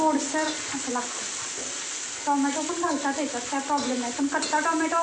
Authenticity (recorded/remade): recorded